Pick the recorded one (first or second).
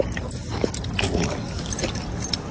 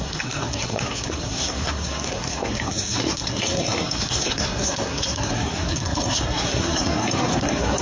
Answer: first